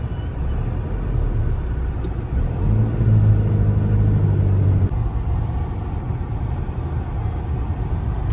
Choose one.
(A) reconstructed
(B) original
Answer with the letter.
B